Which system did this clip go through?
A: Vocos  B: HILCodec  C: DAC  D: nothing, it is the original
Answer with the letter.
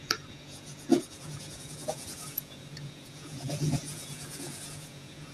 A